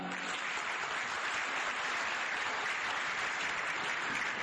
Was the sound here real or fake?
real